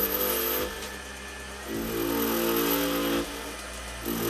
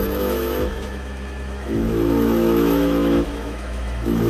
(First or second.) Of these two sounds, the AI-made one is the second